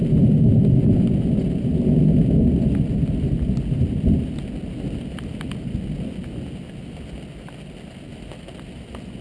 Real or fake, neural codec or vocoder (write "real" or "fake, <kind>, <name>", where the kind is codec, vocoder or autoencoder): real